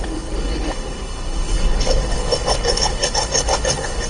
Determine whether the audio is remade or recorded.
remade